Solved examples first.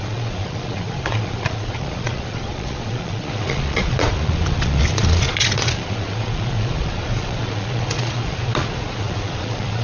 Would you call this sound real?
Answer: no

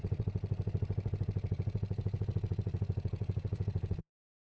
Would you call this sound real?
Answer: no